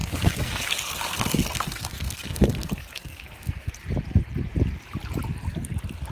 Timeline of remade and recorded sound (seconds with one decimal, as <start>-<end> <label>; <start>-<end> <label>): 0.0-3.7 remade; 3.7-6.1 recorded